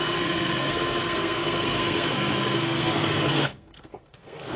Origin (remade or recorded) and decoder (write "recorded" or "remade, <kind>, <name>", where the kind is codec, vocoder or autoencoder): remade, codec, SNAC